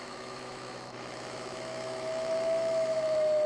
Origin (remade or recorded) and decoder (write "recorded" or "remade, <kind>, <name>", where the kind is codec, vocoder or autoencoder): remade, autoencoder, DAC-VAE